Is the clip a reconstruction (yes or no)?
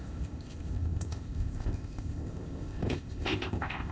yes